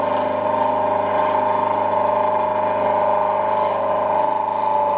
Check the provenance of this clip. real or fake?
real